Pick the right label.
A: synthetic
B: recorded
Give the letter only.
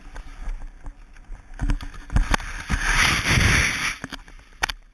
B